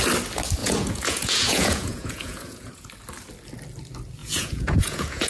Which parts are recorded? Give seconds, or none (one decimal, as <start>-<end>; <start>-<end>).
0.0-0.6; 2.9-4.2